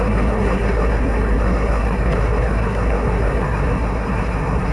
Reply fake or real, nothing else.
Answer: fake